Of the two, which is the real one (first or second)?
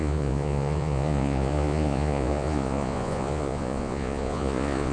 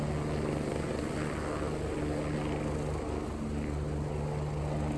second